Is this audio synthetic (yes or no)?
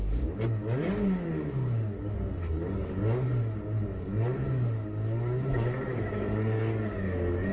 yes